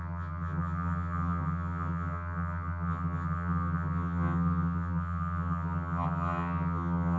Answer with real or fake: fake